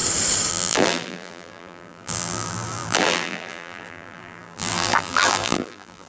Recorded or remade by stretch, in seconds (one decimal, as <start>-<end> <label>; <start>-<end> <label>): 0.0-0.5 recorded; 0.5-6.1 remade